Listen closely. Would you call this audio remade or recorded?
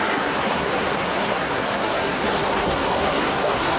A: remade